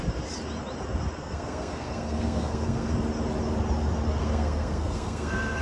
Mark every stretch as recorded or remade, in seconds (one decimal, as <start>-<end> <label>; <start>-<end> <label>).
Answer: 0.0-1.2 recorded; 1.2-2.9 remade; 2.9-4.2 recorded; 4.2-5.6 remade